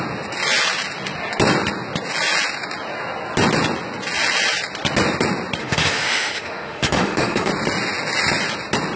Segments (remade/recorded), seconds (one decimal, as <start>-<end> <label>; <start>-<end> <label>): 0.0-5.6 recorded; 5.6-7.5 remade; 7.5-9.0 recorded